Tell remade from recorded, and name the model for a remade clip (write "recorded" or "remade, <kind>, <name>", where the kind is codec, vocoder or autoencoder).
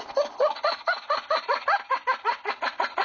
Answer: recorded